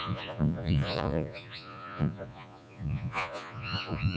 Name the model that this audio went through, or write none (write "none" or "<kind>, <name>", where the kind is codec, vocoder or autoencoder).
vocoder, Vocos